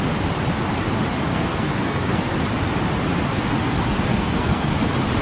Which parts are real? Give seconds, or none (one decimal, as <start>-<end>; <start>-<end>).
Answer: 0.0-1.3; 2.3-4.1; 4.7-5.2